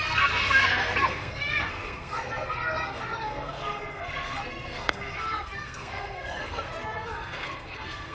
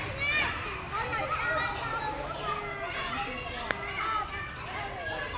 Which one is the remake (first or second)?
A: first